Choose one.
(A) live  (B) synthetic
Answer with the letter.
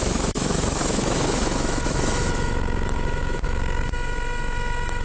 B